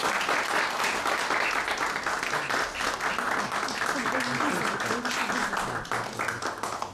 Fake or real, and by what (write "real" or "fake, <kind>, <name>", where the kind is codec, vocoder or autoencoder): real